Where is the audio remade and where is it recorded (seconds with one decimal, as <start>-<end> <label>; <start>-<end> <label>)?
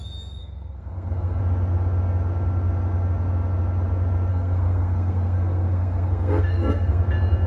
0.0-0.4 recorded; 0.4-1.4 remade; 1.4-4.3 recorded; 4.3-7.0 remade; 7.0-7.5 recorded